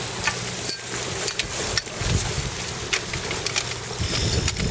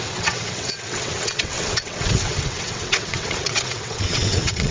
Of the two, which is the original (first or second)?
first